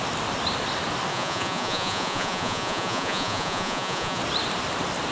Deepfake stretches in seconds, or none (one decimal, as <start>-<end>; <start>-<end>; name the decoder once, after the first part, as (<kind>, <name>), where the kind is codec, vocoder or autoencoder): 1.1-4.2 (vocoder, Vocos)